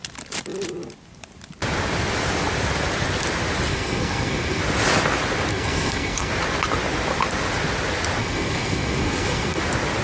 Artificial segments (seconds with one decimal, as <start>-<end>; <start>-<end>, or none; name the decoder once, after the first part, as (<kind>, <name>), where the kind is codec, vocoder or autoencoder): 3.7-4.6 (codec, SNAC); 5.5-6.3; 8.2-9.6